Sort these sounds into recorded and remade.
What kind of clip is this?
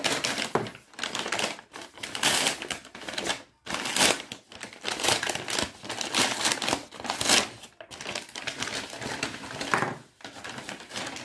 recorded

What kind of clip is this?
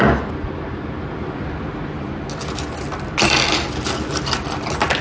recorded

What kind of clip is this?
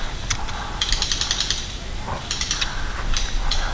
recorded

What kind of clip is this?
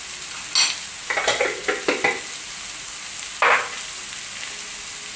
recorded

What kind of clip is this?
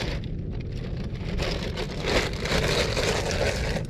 recorded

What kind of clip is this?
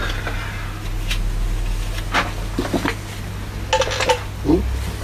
recorded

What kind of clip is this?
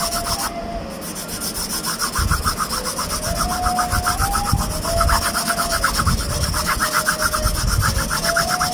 recorded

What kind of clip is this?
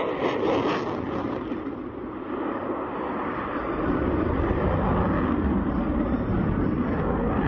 recorded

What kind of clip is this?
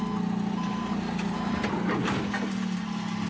recorded